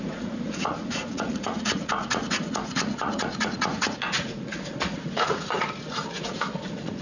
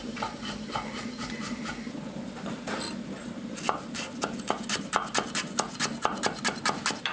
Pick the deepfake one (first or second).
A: first